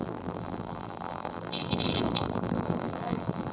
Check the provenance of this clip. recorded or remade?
remade